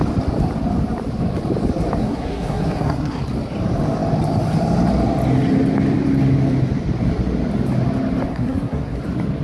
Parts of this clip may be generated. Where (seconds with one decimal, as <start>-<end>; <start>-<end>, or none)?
2.0-3.2; 8.3-9.0